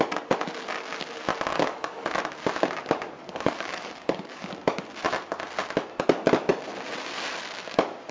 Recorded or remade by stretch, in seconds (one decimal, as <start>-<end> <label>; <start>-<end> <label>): 0.0-1.5 recorded; 1.5-2.2 remade; 2.2-3.2 recorded; 3.2-4.5 remade; 4.5-8.1 recorded